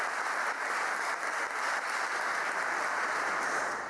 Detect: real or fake fake